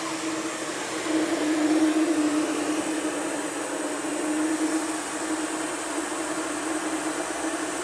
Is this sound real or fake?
real